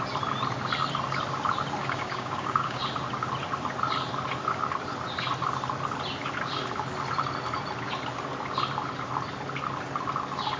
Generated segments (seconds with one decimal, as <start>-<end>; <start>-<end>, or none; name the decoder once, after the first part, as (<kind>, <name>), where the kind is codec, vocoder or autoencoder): 1.8-2.8 (codec, DAC)